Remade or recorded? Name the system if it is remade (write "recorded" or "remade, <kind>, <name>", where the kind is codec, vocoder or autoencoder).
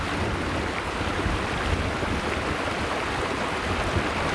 recorded